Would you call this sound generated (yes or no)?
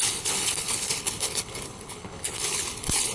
yes